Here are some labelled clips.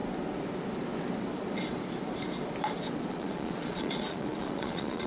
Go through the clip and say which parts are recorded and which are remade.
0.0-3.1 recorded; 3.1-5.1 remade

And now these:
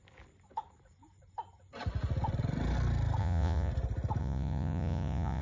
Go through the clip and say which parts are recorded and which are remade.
0.0-3.2 recorded; 3.2-3.7 remade; 3.7-4.2 recorded; 4.2-5.4 remade

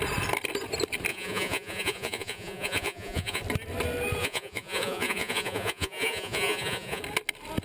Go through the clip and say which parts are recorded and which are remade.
0.0-1.1 recorded; 1.1-3.4 remade; 3.4-4.2 recorded; 4.2-7.0 remade; 7.0-7.6 recorded